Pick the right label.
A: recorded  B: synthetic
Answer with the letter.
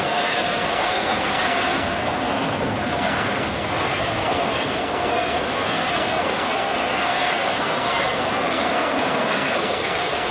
B